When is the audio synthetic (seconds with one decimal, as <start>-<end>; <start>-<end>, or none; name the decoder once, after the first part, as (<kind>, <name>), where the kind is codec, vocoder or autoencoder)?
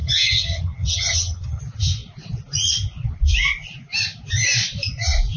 0.0-1.6 (vocoder, HiFi-GAN)